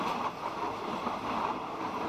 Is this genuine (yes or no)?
yes